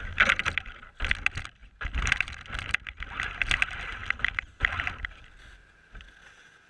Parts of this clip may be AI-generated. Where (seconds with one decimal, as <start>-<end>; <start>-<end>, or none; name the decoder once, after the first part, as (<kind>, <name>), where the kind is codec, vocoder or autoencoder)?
none